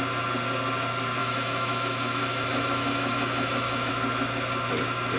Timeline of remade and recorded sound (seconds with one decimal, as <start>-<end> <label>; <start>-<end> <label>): 0.0-1.2 recorded; 1.2-3.9 remade; 3.9-5.2 recorded